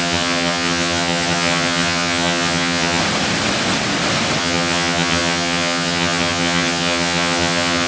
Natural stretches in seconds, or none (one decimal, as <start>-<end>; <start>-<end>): 3.0-4.4